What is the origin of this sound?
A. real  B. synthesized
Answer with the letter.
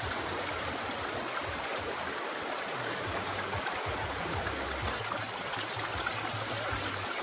A